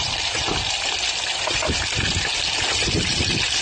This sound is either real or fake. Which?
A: real